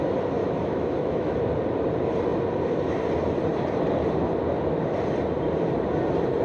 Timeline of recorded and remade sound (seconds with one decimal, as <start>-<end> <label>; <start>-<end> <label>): 0.0-0.4 recorded; 0.4-1.4 remade; 1.4-6.4 recorded